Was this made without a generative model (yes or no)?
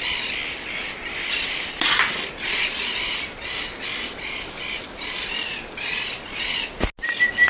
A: yes